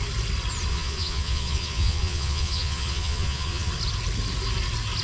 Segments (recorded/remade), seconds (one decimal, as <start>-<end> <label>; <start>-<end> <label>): 0.0-0.7 recorded; 0.7-3.7 remade; 3.7-5.0 recorded

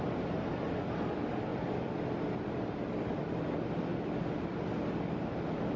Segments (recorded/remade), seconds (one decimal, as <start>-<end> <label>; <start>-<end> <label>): 0.0-5.8 recorded

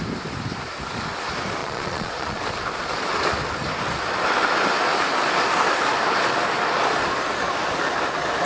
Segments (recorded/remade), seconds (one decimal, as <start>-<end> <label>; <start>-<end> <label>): 0.0-1.6 recorded; 1.6-2.4 remade; 2.4-8.5 recorded

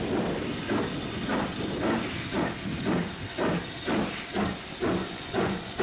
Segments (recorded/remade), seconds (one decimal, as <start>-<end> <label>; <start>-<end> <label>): 0.0-5.0 recorded; 5.0-5.8 remade

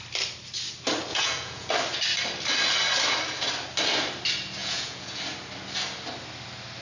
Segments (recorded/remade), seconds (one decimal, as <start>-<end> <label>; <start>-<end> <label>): 0.0-1.1 recorded; 1.1-1.7 remade; 1.7-4.6 recorded; 4.6-5.2 remade; 5.2-6.8 recorded